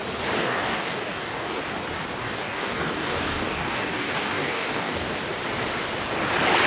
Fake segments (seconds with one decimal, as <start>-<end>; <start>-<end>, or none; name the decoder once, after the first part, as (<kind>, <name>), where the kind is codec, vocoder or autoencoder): 0.4-1.6 (codec, DAC); 2.2-5.1